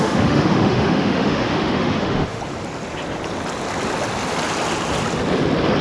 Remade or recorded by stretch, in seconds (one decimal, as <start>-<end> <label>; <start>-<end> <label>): 0.0-2.4 remade; 2.4-5.8 recorded